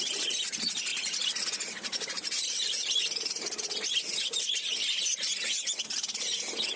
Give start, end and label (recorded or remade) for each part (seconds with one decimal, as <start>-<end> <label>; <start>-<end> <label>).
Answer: 0.0-6.8 recorded